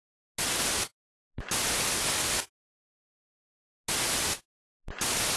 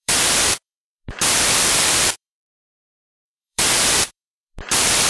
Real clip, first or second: first